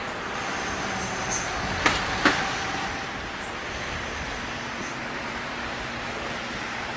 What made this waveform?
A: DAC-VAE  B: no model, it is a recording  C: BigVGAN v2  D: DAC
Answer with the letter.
B